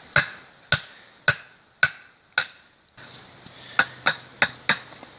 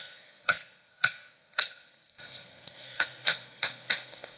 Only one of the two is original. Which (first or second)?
first